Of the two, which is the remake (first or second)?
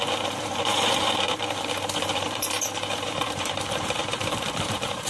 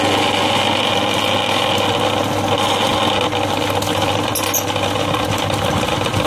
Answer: first